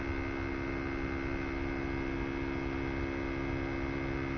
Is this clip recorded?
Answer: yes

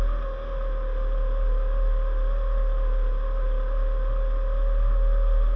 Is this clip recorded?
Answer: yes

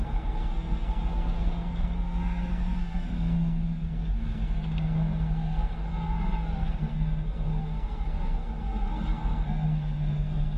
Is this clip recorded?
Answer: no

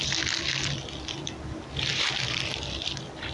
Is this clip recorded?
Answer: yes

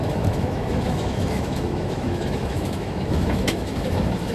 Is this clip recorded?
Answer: no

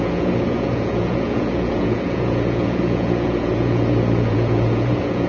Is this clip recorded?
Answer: no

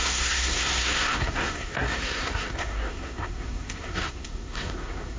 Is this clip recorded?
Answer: no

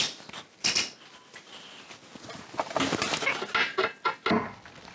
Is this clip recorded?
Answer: yes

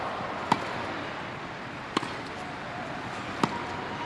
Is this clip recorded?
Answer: yes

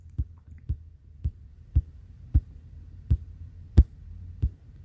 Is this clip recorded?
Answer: no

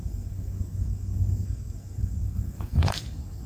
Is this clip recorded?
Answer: no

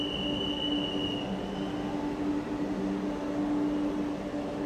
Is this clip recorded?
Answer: yes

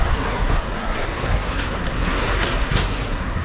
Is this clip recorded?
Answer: no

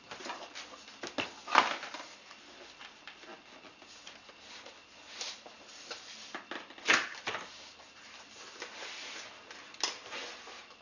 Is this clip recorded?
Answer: yes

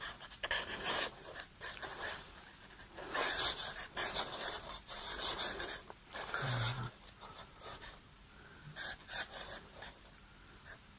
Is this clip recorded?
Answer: no